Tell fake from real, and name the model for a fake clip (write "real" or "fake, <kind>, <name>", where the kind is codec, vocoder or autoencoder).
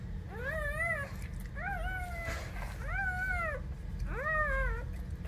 real